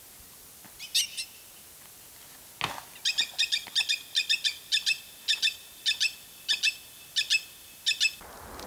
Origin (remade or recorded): recorded